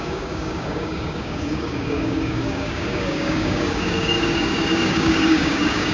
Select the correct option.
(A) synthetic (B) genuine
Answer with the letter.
A